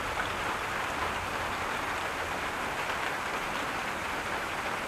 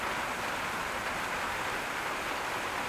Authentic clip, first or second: second